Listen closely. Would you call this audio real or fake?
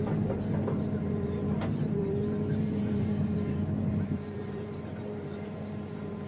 fake